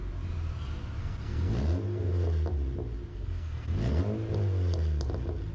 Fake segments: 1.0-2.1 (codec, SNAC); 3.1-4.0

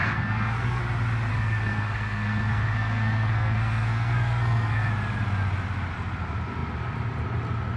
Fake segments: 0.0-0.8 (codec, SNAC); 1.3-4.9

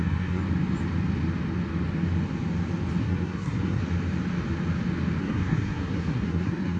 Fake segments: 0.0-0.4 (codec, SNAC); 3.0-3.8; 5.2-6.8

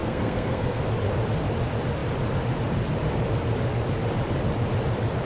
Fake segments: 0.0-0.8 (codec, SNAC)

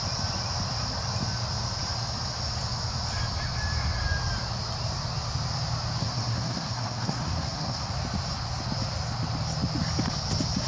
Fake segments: 6.0-7.9 (codec, SNAC)